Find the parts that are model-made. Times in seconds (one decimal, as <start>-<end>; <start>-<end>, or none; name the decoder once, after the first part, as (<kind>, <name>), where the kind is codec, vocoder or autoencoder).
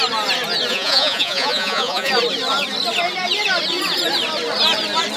0.7-2.1 (vocoder, Vocos)